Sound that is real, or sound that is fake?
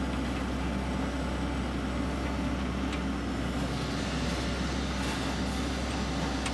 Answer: real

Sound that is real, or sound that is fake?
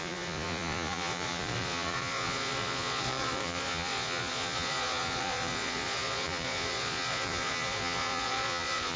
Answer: fake